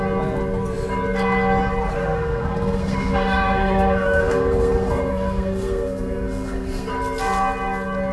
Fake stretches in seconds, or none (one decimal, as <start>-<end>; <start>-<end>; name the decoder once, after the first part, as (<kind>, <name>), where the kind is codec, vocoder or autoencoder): 2.0-6.9 (codec, SNAC)